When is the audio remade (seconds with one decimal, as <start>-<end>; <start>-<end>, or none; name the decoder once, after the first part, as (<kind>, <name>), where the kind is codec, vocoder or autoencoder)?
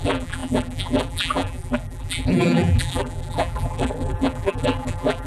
0.0-5.3 (vocoder, BigVGAN v2)